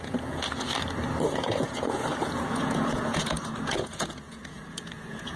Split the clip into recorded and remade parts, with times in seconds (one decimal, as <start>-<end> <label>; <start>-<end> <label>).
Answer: 0.0-0.7 remade; 0.7-1.2 recorded; 1.2-5.4 remade